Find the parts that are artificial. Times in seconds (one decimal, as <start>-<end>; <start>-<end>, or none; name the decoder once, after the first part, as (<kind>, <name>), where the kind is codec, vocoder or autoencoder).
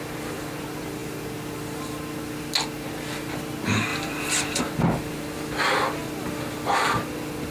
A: 3.9-4.6 (vocoder, BigVGAN v2); 6.0-7.0